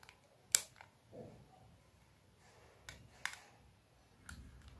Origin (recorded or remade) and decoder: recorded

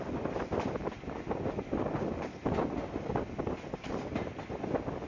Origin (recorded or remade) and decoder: recorded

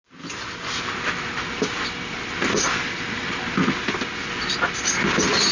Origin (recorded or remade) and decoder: recorded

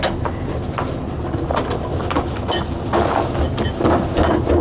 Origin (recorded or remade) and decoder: recorded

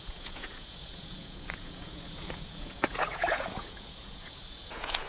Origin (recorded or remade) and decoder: remade, vocoder, Vocos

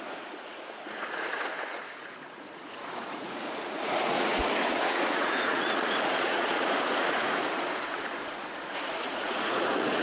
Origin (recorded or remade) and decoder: remade, vocoder, Vocos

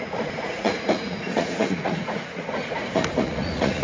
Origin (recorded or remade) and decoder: remade, vocoder, Vocos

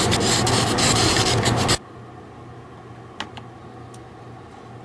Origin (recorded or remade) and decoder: recorded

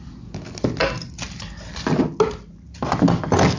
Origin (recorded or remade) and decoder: recorded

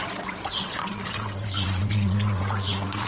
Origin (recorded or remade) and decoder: remade, vocoder, Vocos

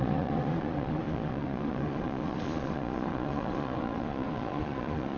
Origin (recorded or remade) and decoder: remade, vocoder, Vocos